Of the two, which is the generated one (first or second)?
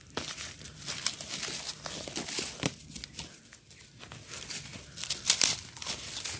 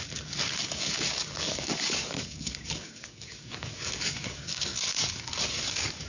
second